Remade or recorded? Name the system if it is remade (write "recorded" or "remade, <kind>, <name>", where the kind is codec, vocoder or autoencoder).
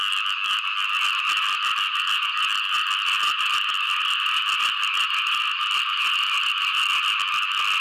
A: recorded